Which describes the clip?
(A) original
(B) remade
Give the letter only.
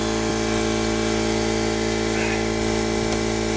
A